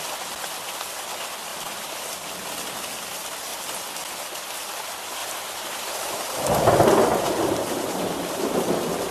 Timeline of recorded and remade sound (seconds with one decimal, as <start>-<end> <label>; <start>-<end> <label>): 0.0-1.5 recorded; 1.5-2.0 remade; 2.0-5.2 recorded; 5.2-6.5 remade; 6.5-7.1 recorded; 7.1-8.3 remade; 8.3-9.1 recorded

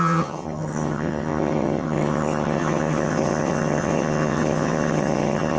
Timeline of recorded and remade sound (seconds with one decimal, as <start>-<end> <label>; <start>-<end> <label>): 0.0-5.6 remade

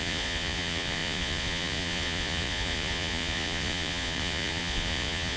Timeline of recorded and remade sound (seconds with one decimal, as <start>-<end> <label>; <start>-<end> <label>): 0.0-5.4 remade